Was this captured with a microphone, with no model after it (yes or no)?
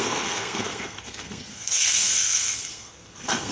no